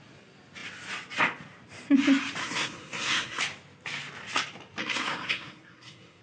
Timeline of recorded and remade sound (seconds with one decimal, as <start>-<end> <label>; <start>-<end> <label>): 0.0-2.4 recorded; 2.4-3.4 remade; 3.4-4.8 recorded; 4.8-6.2 remade